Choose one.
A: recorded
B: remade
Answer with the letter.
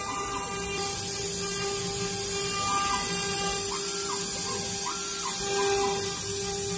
A